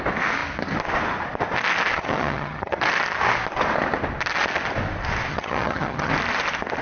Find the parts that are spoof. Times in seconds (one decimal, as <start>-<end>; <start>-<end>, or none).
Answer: 1.9-2.8; 5.3-6.1